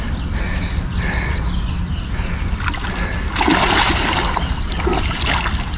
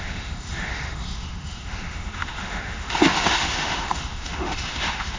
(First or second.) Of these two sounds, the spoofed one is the second